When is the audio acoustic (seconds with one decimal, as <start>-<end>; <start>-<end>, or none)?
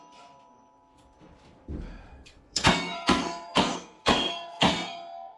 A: 0.0-2.1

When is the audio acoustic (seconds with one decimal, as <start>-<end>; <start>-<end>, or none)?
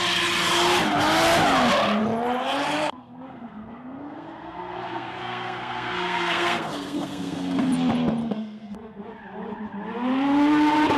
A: 0.0-2.8; 7.7-8.2; 9.0-11.0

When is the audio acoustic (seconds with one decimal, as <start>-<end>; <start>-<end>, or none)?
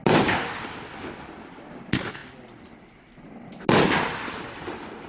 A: 0.0-5.1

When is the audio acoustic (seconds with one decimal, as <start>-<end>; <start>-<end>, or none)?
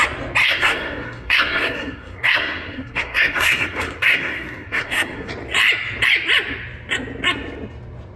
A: 0.0-0.4; 5.3-8.2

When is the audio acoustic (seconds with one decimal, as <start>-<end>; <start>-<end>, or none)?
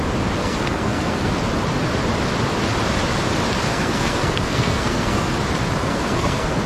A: 0.0-0.4; 1.3-3.7; 5.3-5.8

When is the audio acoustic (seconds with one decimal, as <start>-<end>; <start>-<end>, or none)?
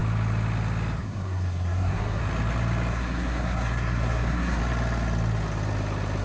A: 0.0-1.0; 2.2-2.9; 4.6-6.2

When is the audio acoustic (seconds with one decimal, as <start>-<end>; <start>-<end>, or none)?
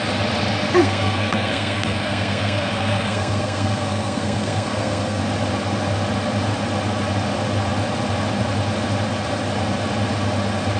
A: 0.0-0.8; 5.2-10.8